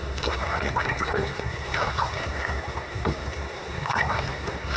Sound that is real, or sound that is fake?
fake